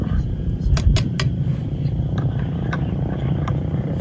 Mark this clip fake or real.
real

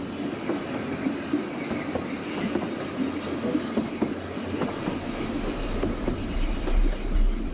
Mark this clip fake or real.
real